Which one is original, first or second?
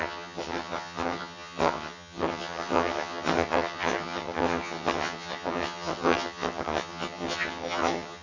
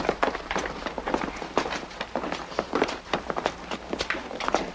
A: second